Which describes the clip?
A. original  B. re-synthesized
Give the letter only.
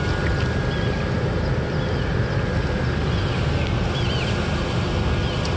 A